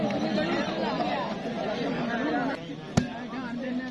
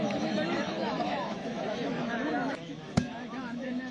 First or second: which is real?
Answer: first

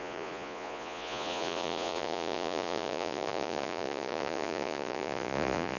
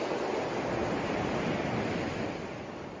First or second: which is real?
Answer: second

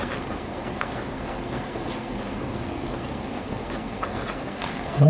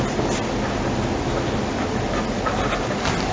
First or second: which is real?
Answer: second